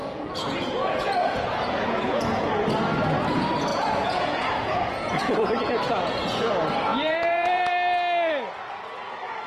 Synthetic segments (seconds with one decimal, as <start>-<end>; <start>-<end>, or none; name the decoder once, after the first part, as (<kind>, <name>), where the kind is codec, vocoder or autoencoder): 0.0-2.5 (vocoder, Vocos); 3.7-6.5; 6.9-7.7